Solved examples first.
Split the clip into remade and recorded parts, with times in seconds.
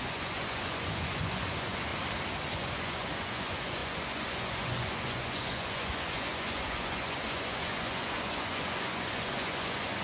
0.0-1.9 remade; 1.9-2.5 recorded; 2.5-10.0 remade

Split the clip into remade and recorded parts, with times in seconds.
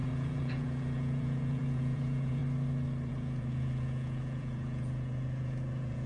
0.0-2.4 remade; 2.4-3.1 recorded; 3.1-6.1 remade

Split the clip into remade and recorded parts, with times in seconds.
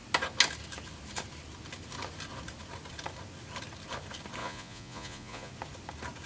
0.0-4.4 recorded; 4.4-5.5 remade; 5.5-6.3 recorded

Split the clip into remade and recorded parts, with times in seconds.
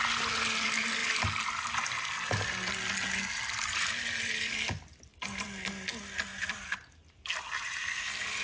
0.0-8.4 recorded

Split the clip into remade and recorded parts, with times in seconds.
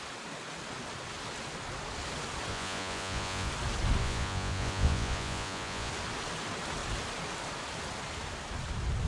0.0-2.5 recorded; 2.5-3.5 remade; 3.5-4.0 recorded; 4.0-5.9 remade; 5.9-9.1 recorded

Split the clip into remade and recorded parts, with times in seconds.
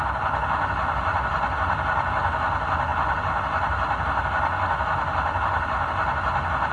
0.0-6.7 recorded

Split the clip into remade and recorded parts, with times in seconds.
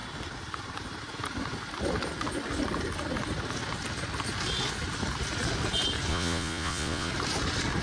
0.0-6.1 recorded; 6.1-7.1 remade; 7.1-7.8 recorded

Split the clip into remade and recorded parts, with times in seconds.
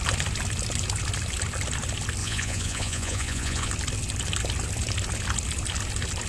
0.0-2.2 recorded; 2.2-3.7 remade; 3.7-6.3 recorded